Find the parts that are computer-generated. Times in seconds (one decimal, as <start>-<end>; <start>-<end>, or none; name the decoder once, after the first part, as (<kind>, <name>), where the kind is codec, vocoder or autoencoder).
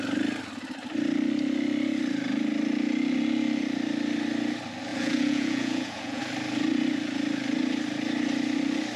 4.9-6.2 (vocoder, Vocos)